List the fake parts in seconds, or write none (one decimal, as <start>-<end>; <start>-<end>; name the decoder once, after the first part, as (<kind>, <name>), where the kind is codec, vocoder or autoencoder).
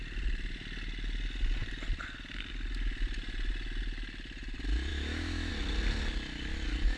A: 4.9-5.5 (autoencoder, DAC-VAE)